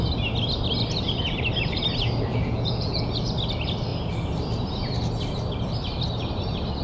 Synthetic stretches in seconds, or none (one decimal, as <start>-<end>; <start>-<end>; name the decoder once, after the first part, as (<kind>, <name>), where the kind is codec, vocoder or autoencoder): 2.3-3.1 (vocoder, Vocos)